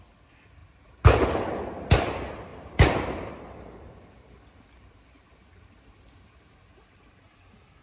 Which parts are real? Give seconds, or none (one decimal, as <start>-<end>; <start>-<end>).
0.0-7.8